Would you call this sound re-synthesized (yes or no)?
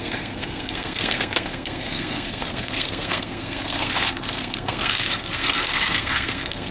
yes